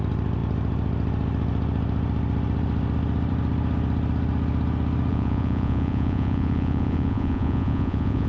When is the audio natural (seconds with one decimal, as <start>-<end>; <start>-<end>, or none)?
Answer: 0.0-5.1